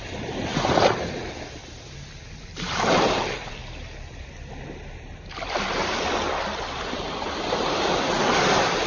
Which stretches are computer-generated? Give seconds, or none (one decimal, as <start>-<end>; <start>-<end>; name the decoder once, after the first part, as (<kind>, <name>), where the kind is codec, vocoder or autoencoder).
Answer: 0.0-1.6 (vocoder, BigVGAN v2); 2.4-3.6; 6.9-8.9